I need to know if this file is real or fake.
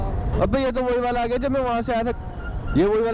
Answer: real